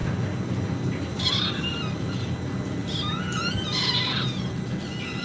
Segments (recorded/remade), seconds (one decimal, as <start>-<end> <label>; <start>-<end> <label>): 0.0-5.2 recorded